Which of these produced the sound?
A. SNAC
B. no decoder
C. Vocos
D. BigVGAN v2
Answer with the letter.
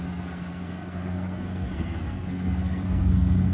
A